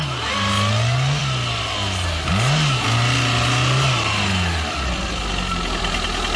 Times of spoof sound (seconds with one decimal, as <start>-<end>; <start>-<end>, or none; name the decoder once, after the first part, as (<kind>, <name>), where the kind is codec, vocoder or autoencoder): none